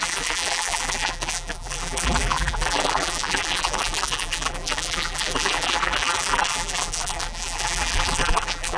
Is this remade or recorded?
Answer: remade